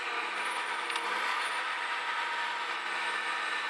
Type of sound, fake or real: real